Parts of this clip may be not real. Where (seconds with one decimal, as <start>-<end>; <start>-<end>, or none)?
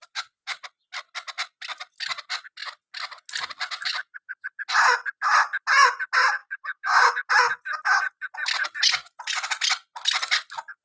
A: 6.4-7.3